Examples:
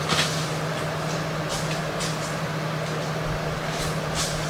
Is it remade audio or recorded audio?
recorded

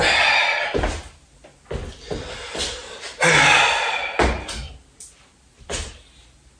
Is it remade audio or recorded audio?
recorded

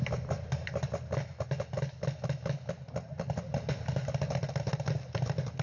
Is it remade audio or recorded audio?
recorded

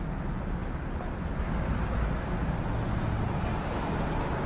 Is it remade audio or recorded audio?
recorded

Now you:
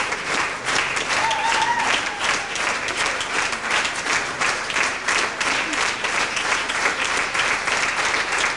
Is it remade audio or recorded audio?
remade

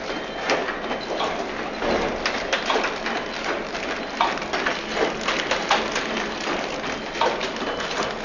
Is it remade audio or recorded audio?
recorded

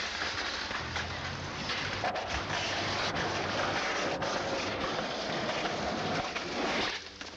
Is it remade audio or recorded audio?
recorded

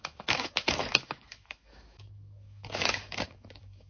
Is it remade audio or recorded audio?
remade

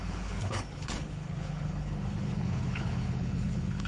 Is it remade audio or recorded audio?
remade